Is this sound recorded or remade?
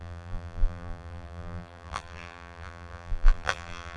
remade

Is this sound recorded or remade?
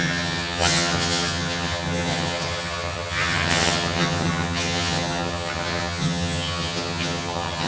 remade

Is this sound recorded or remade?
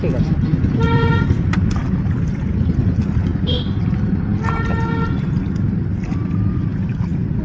recorded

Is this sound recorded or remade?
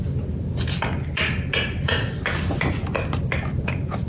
recorded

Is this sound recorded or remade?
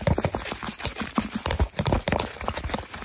recorded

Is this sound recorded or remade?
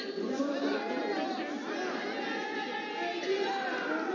recorded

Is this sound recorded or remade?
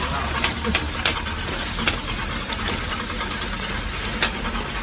recorded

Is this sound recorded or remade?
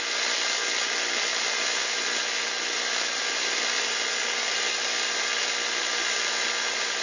recorded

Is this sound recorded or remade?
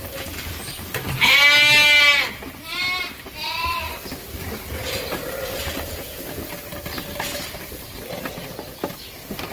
recorded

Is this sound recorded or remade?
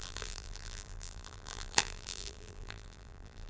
remade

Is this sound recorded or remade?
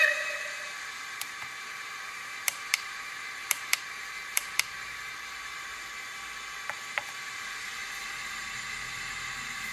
remade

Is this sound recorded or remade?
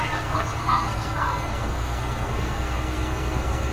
remade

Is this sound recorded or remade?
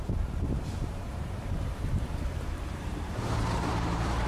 remade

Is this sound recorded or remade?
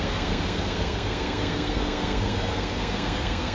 remade